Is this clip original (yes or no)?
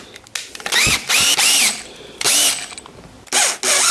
yes